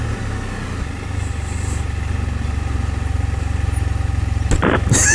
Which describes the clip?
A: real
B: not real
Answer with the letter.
A